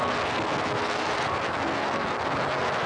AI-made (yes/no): no